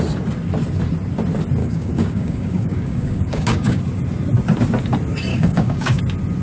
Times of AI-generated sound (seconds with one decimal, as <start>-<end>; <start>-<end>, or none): 1.6-3.8; 5.3-6.0